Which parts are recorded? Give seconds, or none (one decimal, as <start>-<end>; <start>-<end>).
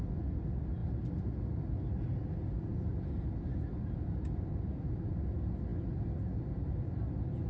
0.0-7.5